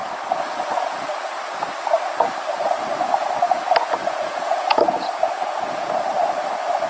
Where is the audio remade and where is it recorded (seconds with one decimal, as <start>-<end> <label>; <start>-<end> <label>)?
0.0-4.0 recorded; 4.0-5.9 remade; 5.9-6.9 recorded